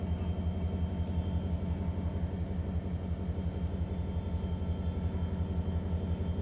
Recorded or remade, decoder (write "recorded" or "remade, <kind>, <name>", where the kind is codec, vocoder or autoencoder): recorded